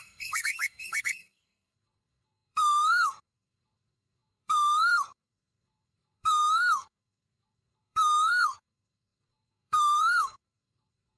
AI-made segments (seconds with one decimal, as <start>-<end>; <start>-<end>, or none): 0.0-11.2